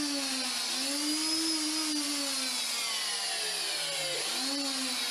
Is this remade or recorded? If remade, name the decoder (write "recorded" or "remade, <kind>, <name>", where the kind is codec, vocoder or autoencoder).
recorded